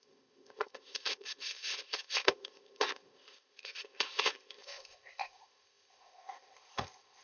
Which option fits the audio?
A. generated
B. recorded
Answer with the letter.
A